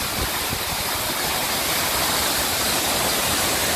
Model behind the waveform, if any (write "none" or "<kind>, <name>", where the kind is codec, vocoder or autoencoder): none